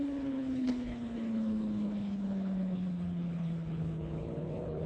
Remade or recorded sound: remade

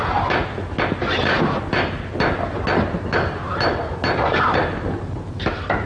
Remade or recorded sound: recorded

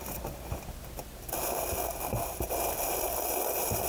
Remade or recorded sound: recorded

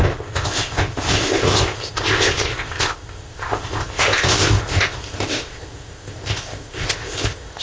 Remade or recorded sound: remade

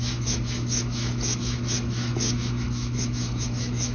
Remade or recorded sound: remade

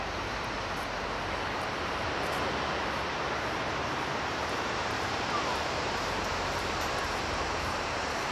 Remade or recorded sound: remade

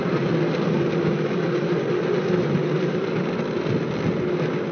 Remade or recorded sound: recorded